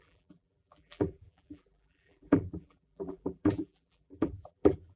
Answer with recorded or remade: remade